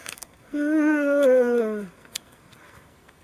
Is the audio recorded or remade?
remade